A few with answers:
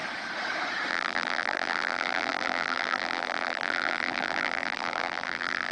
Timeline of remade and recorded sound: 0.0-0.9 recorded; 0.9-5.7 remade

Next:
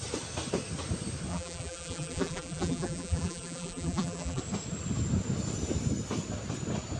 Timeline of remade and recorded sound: 0.0-1.3 recorded; 1.3-4.4 remade; 4.4-7.0 recorded

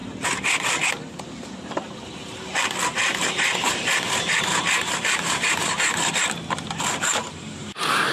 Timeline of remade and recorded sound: 0.0-0.9 remade; 0.9-3.1 recorded; 3.1-6.1 remade; 6.1-7.2 recorded; 7.2-8.1 remade